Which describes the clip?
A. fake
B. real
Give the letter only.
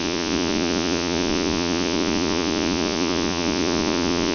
A